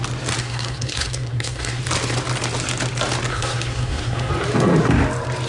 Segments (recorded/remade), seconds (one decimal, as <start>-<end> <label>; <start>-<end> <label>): 0.0-0.4 recorded; 0.4-1.8 remade; 1.8-3.3 recorded; 3.3-4.3 remade; 4.3-5.5 recorded